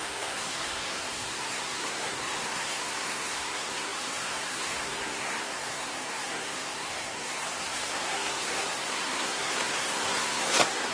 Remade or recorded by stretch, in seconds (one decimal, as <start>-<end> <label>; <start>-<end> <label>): 0.0-10.9 remade